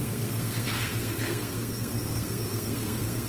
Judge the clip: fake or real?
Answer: fake